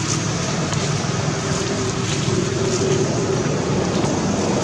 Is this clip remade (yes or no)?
no